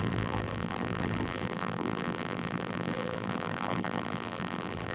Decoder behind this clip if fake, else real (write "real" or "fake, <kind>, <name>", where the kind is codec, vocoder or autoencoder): fake, vocoder, BigVGAN v2